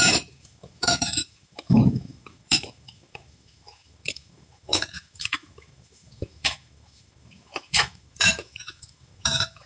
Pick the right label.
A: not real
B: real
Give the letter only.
A